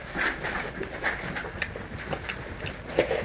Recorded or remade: recorded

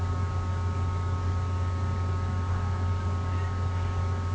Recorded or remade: remade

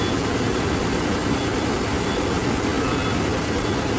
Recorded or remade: recorded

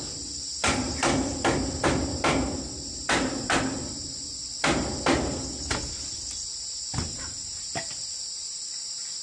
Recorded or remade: recorded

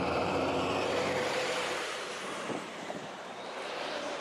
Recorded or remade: remade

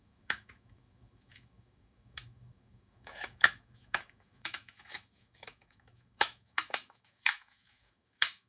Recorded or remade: remade